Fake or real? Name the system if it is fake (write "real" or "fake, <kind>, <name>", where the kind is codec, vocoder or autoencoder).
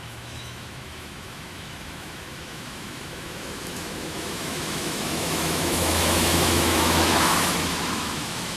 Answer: fake, autoencoder, DAC-VAE